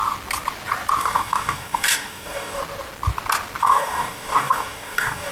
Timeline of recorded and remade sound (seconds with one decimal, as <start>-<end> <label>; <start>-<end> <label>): 0.0-1.0 recorded; 1.0-2.6 remade; 2.6-3.6 recorded; 3.6-5.3 remade